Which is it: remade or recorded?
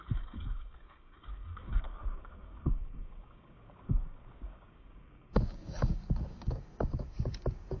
remade